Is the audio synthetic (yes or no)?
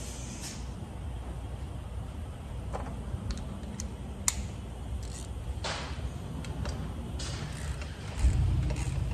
no